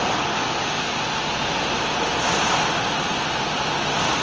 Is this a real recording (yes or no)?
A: yes